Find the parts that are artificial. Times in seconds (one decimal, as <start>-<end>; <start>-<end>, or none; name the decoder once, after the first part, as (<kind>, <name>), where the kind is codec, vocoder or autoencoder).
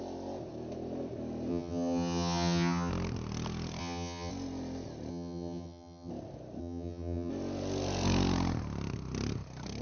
1.5-2.9 (vocoder, HiFi-GAN); 3.8-4.3; 5.1-6.1; 6.6-7.3